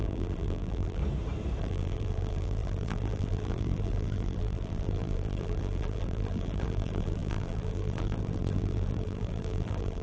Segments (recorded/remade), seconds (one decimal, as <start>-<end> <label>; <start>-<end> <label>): 0.0-1.0 remade; 1.0-1.6 recorded; 1.6-10.0 remade